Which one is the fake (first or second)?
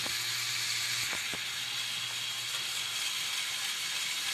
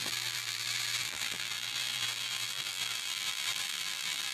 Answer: second